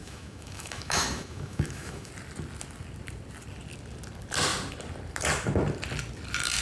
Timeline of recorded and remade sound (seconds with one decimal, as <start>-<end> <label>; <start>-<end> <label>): 0.0-2.1 remade; 2.1-6.6 recorded